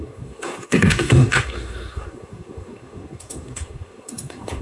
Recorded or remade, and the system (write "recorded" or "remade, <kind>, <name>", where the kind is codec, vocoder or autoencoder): remade, codec, SNAC